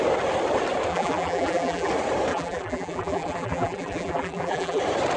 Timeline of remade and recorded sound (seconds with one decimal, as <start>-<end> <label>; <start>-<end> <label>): 0.0-0.9 recorded; 0.9-1.9 remade; 1.9-2.3 recorded; 2.3-4.8 remade; 4.8-5.2 recorded